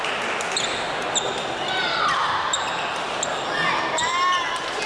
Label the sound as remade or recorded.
recorded